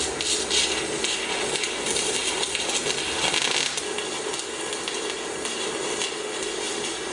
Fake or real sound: real